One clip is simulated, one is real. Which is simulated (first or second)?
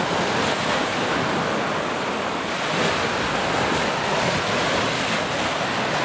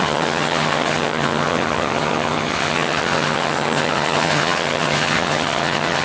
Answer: second